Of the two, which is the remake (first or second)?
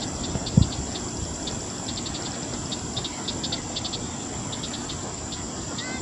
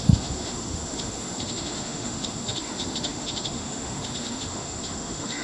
second